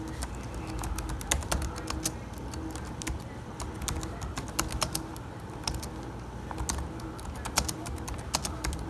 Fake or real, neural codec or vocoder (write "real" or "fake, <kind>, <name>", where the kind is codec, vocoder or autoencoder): real